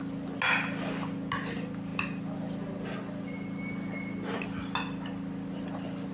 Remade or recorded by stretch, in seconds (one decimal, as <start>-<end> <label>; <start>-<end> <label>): 0.0-6.1 recorded

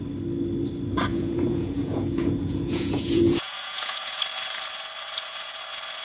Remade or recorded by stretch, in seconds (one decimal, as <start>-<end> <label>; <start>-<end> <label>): 0.0-1.1 recorded; 1.1-4.2 remade; 4.2-6.0 recorded

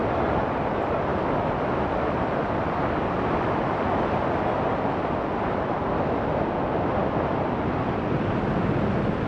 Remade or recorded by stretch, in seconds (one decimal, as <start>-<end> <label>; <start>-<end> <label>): 0.0-9.3 recorded

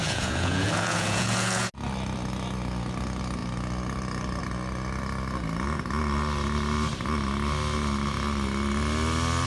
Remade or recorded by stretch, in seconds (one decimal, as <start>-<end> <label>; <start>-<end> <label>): 0.0-1.7 remade; 1.7-9.5 recorded

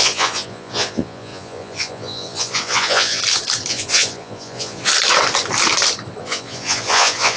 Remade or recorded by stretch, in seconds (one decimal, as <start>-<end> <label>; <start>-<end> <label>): 0.0-3.2 remade; 3.2-3.7 recorded; 3.7-4.9 remade; 4.9-6.2 recorded; 6.2-7.4 remade